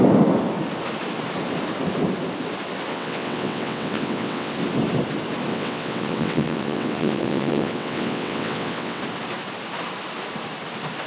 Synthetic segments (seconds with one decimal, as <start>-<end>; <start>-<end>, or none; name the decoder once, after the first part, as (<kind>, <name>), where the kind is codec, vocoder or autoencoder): 2.9-4.5 (vocoder, WaveNeXt); 5.5-9.0